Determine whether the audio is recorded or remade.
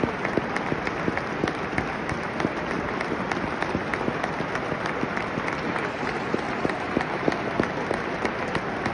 recorded